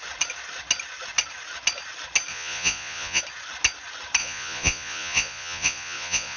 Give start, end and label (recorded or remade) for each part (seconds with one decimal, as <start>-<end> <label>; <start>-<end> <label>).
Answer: 0.0-2.3 recorded; 2.3-3.2 remade; 3.2-4.2 recorded; 4.2-6.4 remade